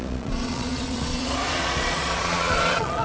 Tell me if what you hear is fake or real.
fake